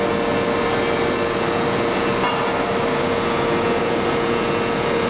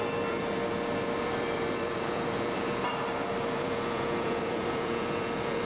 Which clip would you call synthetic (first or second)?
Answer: second